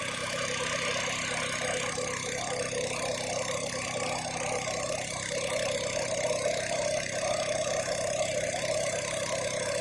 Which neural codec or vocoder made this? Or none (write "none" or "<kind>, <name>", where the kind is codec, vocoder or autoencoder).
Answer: none